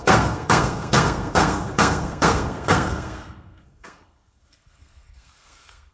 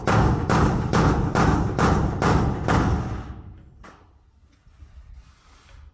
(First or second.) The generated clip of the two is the first